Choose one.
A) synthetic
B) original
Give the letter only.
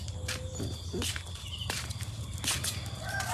B